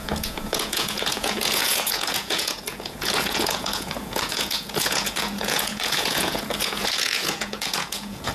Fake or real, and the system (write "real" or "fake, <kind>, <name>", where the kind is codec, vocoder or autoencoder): fake, vocoder, Vocos